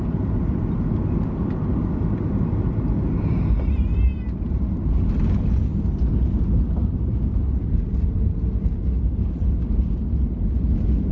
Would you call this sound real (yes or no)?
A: yes